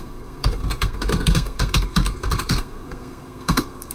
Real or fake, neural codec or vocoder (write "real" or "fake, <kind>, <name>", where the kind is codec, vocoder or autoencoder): fake, codec, SNAC